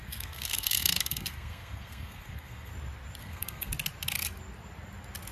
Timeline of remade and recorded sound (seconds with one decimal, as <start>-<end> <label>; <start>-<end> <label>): 0.0-2.7 remade; 2.7-3.2 recorded; 3.2-3.7 remade; 3.7-5.3 recorded